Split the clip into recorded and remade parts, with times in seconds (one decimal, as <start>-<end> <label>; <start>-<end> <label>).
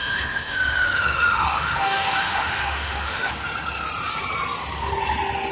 0.0-3.3 remade; 3.3-5.5 recorded